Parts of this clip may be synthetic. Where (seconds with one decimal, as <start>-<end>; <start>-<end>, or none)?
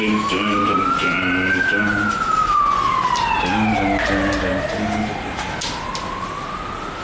0.0-0.6; 2.1-2.6